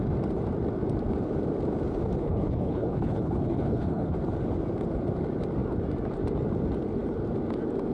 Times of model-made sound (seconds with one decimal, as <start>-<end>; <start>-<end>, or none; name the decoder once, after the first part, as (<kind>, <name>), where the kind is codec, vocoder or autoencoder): 2.2-4.1 (codec, HILCodec)